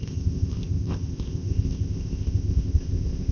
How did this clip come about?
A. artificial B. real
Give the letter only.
A